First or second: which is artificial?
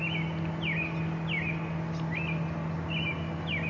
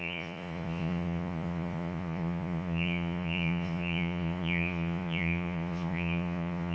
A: second